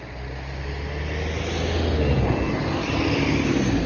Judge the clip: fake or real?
real